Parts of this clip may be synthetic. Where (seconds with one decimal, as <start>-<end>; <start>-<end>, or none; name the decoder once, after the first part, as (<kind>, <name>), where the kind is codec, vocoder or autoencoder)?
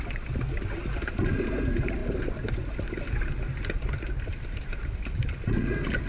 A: none